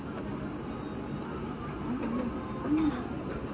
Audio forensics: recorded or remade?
recorded